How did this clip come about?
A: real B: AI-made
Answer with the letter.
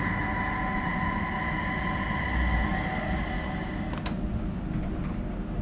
A